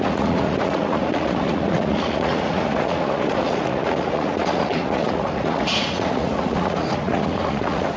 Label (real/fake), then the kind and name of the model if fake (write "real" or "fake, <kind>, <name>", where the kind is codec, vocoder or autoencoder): fake, vocoder, Vocos